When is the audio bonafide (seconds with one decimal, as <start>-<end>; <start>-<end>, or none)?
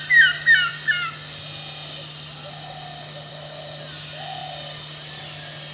0.0-4.4; 5.2-5.7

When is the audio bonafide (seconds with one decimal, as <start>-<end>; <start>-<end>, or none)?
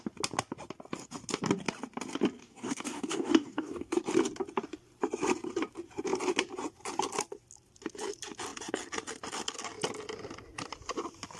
0.0-2.4; 3.9-11.4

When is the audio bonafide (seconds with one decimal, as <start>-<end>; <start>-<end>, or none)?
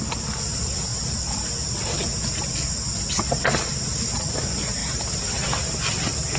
0.0-6.4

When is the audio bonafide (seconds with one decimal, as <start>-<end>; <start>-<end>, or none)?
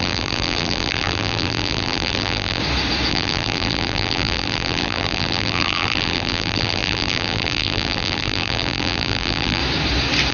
2.6-3.1; 9.6-10.3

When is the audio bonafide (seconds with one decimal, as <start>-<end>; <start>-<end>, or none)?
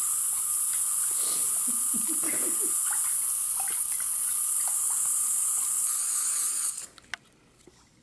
0.0-8.0